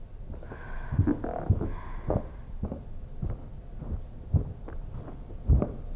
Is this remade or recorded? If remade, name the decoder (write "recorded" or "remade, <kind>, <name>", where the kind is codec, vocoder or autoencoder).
recorded